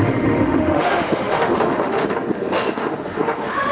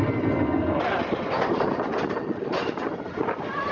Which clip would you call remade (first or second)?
first